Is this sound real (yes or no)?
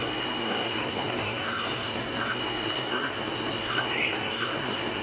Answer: no